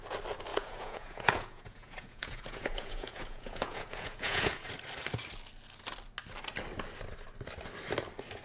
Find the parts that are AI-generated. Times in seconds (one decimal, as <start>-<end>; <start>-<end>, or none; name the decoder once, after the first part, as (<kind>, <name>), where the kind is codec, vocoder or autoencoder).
0.5-4.7 (vocoder, Vocos)